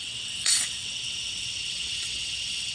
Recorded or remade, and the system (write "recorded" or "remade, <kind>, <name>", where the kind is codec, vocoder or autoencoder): remade, vocoder, WaveNeXt